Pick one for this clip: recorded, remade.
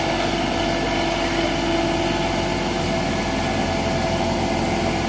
recorded